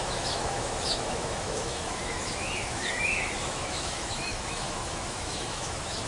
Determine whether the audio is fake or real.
fake